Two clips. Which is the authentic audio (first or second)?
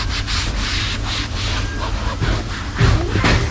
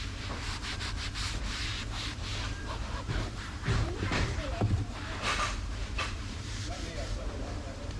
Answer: first